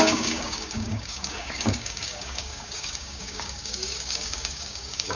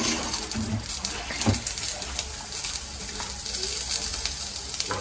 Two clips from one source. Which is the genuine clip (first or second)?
second